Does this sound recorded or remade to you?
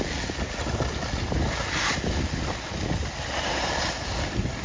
recorded